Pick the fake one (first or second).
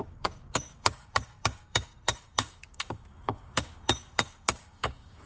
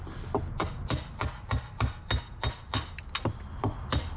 first